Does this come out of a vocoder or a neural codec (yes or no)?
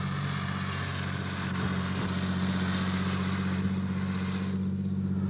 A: no